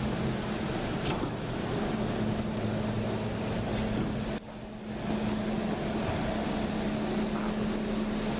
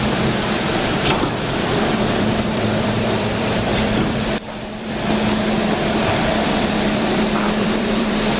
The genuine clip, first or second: first